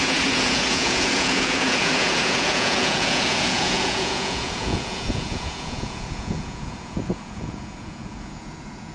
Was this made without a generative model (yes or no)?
no